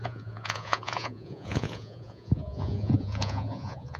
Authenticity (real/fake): fake